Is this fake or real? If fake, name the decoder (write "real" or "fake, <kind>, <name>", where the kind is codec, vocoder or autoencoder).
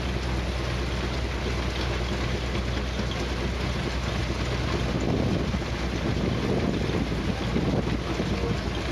real